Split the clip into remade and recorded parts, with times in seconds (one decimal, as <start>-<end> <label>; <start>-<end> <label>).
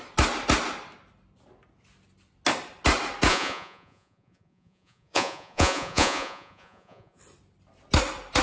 0.0-3.3 recorded; 3.3-7.2 remade; 7.2-8.4 recorded